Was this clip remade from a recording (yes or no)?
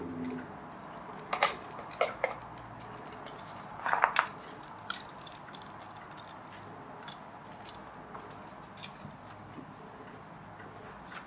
no